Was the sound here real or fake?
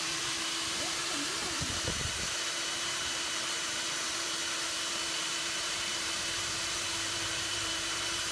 fake